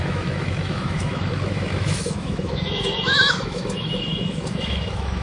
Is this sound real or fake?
fake